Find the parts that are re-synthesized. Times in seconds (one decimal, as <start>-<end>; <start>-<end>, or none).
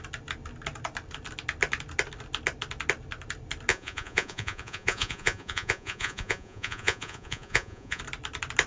3.7-8.0